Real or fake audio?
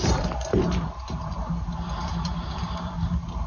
real